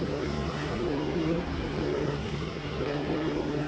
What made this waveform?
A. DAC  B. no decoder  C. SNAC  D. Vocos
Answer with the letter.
C